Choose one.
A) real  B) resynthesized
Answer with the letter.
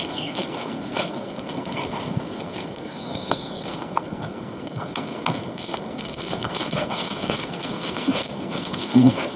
B